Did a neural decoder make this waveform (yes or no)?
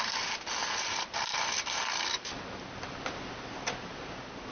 no